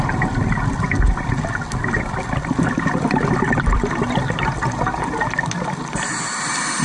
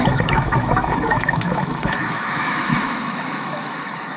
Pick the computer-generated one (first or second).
second